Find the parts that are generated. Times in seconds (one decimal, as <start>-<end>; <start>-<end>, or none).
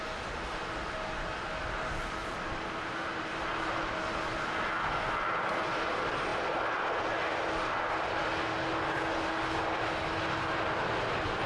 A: 2.2-3.9